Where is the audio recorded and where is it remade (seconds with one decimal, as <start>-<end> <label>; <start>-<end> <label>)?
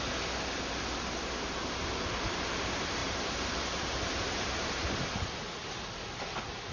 0.0-3.0 recorded; 3.0-4.9 remade; 4.9-6.7 recorded